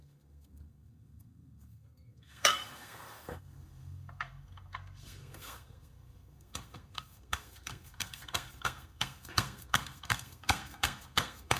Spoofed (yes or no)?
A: yes